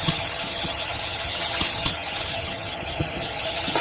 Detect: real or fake fake